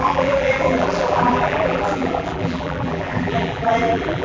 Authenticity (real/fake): fake